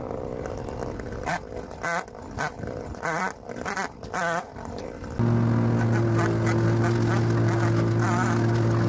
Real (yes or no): yes